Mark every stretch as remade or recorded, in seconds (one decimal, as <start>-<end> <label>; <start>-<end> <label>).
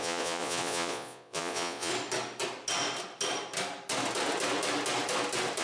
0.0-1.9 remade; 1.9-5.6 recorded